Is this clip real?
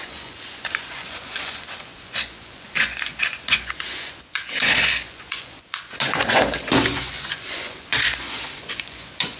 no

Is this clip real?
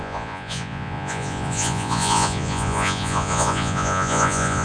no